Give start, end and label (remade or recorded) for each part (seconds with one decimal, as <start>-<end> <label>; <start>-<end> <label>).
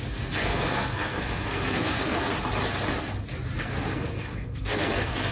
0.0-2.3 remade; 2.3-3.6 recorded; 3.6-5.3 remade